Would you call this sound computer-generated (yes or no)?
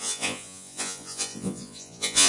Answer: yes